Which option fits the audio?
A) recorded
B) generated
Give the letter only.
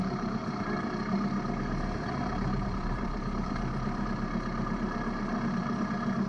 B